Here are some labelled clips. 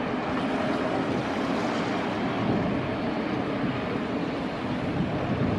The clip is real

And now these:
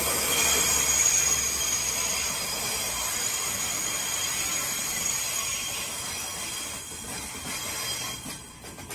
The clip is real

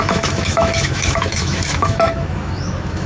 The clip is fake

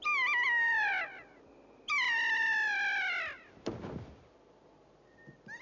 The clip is real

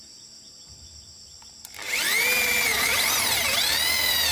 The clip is real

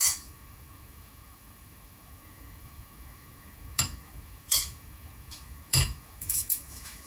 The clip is fake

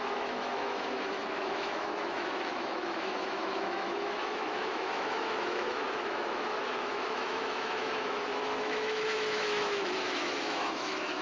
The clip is fake